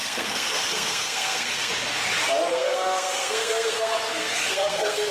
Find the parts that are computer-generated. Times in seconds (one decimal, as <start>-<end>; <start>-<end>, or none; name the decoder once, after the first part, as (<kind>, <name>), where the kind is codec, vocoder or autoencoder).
0.0-1.7 (codec, SNAC); 2.5-5.1